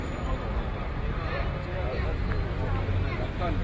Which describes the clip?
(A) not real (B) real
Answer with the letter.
B